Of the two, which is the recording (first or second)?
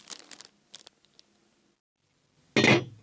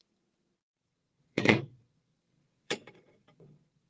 first